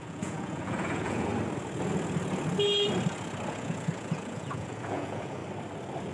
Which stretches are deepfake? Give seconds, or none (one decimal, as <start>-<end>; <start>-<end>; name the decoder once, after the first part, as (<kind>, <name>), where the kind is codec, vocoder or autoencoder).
0.0-1.3 (vocoder, Vocos); 3.5-5.4

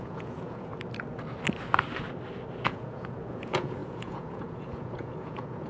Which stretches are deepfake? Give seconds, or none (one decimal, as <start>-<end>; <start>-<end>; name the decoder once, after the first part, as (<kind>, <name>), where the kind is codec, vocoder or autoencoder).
0.0-0.7 (vocoder, Vocos); 2.6-5.7

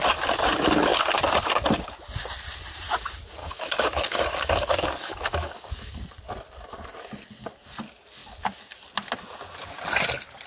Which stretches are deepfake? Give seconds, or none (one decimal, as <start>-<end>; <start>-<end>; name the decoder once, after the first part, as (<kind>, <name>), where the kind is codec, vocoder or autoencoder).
3.4-6.0 (codec, DAC)

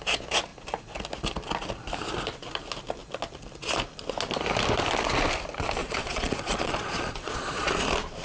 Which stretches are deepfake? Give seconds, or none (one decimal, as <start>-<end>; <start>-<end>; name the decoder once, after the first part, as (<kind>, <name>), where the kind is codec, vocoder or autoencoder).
5.8-7.7 (vocoder, Vocos)

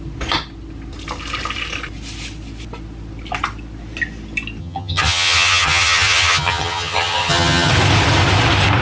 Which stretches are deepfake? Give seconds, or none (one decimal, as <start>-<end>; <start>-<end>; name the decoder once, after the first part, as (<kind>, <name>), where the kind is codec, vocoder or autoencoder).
4.6-7.7 (vocoder, HiFi-GAN)